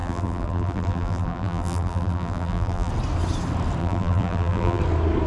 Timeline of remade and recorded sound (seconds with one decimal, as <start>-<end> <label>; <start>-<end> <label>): 0.0-2.9 remade; 2.9-3.8 recorded; 3.8-4.8 remade; 4.8-5.3 recorded